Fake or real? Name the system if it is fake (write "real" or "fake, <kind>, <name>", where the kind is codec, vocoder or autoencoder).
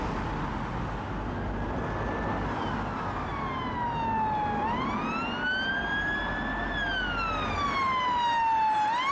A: real